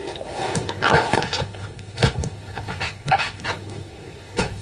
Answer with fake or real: fake